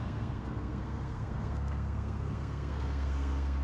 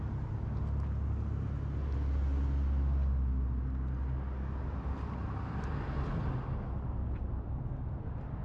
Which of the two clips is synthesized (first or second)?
first